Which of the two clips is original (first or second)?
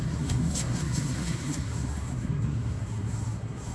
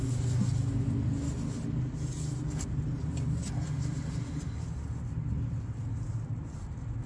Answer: second